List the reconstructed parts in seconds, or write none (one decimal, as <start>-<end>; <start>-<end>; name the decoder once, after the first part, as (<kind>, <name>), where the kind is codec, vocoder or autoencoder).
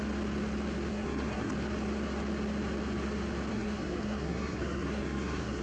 0.9-1.5 (codec, SNAC); 3.5-5.6